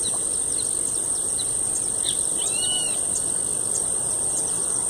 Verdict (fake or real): real